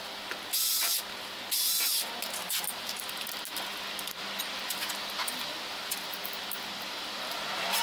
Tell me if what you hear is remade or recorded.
recorded